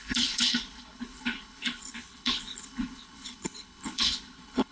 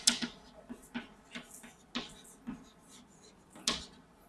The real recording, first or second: second